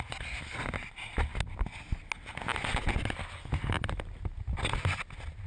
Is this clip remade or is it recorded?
recorded